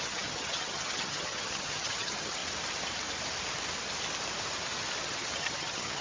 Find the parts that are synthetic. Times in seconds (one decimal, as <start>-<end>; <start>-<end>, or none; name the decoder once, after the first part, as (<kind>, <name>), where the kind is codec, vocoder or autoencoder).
0.0-2.4 (vocoder, HiFi-GAN); 5.0-6.0